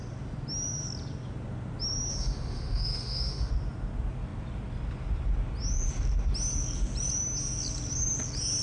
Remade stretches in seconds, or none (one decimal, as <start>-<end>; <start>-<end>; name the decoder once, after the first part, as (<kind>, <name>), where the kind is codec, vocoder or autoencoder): 2.1-3.5 (autoencoder, DAC-VAE)